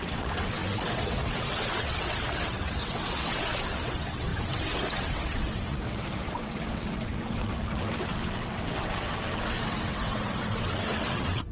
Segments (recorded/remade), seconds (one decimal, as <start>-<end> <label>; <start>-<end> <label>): 0.0-11.5 remade